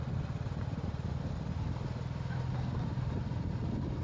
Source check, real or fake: real